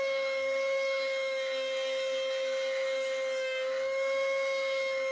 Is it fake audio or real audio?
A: fake